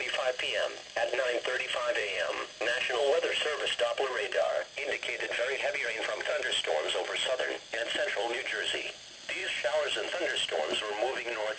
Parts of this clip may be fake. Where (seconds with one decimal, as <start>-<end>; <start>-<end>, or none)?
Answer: 0.8-4.5

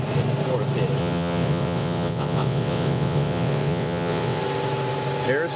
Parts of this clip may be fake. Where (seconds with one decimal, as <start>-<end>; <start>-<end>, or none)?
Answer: 1.0-4.4

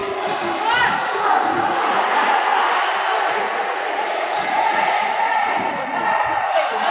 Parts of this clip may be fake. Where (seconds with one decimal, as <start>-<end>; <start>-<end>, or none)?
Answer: 0.9-2.5; 3.3-6.9

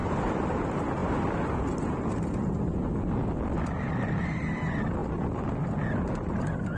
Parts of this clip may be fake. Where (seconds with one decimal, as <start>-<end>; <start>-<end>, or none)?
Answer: 0.0-0.6; 5.0-6.8